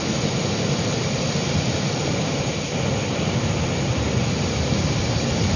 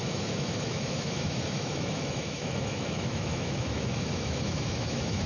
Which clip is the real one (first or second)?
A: first